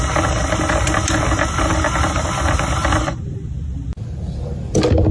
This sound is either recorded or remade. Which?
recorded